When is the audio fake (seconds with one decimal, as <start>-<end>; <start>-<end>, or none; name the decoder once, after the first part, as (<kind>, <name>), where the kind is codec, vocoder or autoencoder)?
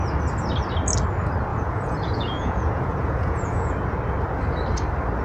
1.5-3.7 (vocoder, Vocos)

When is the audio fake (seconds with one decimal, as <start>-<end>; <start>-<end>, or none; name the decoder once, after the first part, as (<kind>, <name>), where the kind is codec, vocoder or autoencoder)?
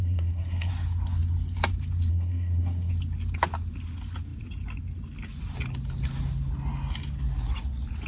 0.0-0.7 (codec, SNAC); 2.1-2.9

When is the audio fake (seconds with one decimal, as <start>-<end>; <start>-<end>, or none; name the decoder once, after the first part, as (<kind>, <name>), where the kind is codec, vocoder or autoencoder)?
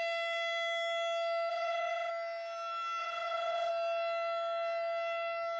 1.5-2.1 (vocoder, Vocos); 3.0-3.7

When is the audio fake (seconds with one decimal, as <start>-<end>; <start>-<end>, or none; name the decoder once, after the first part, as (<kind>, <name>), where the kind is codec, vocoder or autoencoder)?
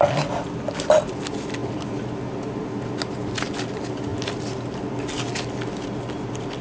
none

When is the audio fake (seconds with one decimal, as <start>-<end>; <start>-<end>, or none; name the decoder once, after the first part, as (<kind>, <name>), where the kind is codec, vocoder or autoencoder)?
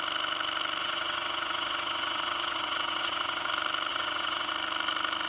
0.8-3.5 (vocoder, Vocos); 3.9-4.5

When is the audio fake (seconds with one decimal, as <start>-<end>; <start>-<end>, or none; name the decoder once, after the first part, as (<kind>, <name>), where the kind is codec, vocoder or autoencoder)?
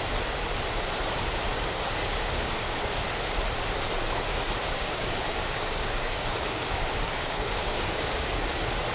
1.5-2.8 (codec, DAC); 4.6-8.4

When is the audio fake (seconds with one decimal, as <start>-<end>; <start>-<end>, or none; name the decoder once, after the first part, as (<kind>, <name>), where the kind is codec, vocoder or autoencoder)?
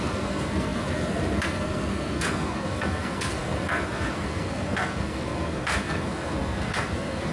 0.0-7.3 (codec, SNAC)